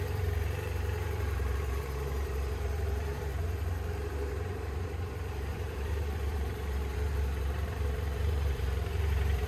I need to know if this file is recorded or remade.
remade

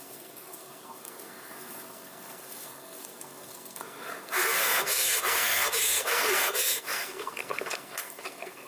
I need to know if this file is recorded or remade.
remade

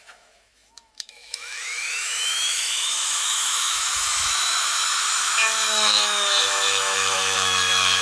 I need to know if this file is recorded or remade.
remade